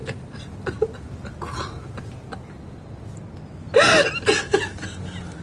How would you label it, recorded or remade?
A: recorded